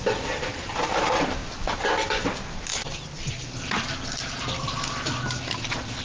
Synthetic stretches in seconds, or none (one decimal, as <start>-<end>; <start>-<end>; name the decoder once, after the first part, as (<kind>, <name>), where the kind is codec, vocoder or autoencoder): none